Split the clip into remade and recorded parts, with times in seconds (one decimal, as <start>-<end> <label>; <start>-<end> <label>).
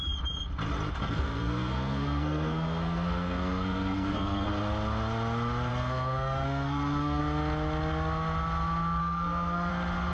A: 0.0-1.0 recorded; 1.0-4.5 remade; 4.5-5.7 recorded; 5.7-7.2 remade; 7.2-9.0 recorded; 9.0-9.7 remade; 9.7-10.1 recorded